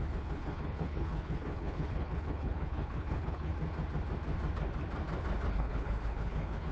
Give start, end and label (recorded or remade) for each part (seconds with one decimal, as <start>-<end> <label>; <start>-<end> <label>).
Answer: 0.0-3.5 remade; 3.5-5.5 recorded; 5.5-6.7 remade